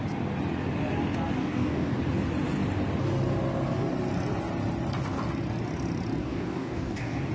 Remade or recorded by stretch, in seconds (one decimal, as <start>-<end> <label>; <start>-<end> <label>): 0.0-1.4 recorded; 1.4-2.0 remade; 2.0-6.2 recorded; 6.2-7.3 remade